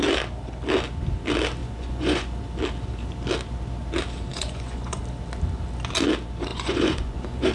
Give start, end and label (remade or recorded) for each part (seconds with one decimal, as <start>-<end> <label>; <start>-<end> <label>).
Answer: 0.0-1.6 recorded; 1.6-2.4 remade; 2.4-4.3 recorded; 4.3-5.0 remade; 5.0-6.5 recorded; 6.5-7.5 remade